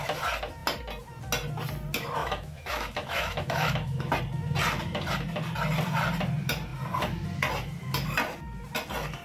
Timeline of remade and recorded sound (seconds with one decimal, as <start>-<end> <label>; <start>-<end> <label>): 0.0-2.2 recorded; 2.2-4.1 remade; 4.1-9.2 recorded